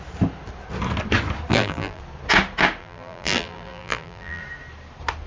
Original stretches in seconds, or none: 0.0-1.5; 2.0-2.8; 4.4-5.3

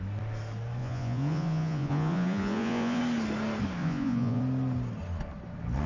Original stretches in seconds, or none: 0.0-0.8; 3.0-3.8; 4.4-5.9

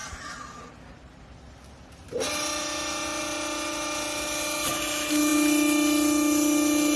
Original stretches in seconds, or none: 0.0-7.0